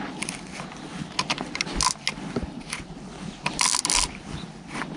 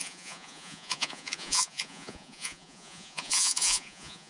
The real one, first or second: first